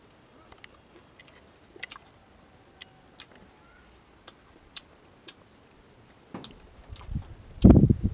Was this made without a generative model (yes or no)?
yes